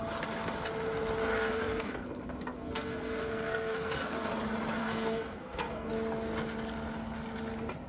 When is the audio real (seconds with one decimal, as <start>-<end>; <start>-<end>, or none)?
0.0-1.3; 4.3-4.8; 5.9-7.9